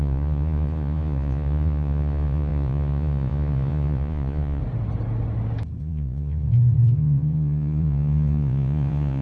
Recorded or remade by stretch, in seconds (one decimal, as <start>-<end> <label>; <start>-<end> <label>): 0.0-4.6 remade; 4.6-5.8 recorded; 5.8-9.2 remade